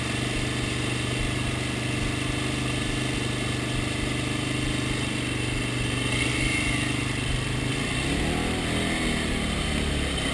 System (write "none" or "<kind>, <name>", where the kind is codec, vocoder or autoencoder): none